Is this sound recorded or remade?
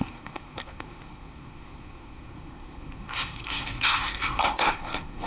remade